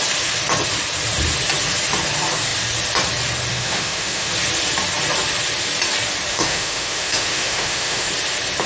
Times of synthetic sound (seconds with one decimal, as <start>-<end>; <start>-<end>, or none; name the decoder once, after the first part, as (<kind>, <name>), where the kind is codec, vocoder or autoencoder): 3.5-4.3 (autoencoder, DAC-VAE); 6.3-8.1